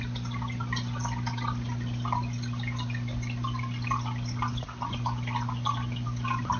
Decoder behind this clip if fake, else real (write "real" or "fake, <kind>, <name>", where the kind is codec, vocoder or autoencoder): real